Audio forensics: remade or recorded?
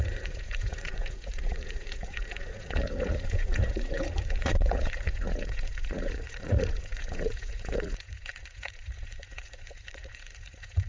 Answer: remade